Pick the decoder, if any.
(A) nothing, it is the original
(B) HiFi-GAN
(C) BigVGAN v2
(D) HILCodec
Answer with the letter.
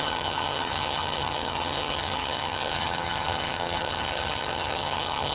B